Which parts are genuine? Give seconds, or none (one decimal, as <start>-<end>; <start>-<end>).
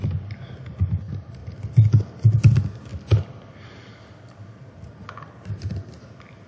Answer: 0.0-6.5